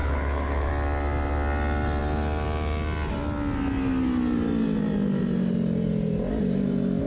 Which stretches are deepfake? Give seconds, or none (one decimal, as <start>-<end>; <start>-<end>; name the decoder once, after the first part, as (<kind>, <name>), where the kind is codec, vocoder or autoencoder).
0.0-0.7 (codec, HILCodec)